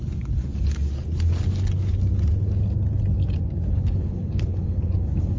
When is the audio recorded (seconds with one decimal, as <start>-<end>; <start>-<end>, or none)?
0.5-3.7